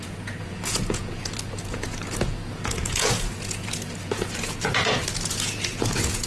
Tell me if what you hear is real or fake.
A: fake